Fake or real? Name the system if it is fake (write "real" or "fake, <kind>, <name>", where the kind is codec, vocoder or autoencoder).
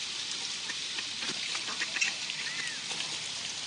fake, vocoder, BigVGAN v2